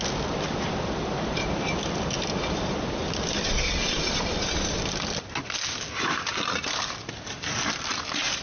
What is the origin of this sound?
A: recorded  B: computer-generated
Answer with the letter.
A